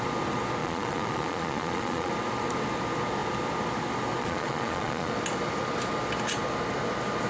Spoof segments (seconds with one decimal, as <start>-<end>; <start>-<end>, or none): 0.6-2.1; 4.2-5.1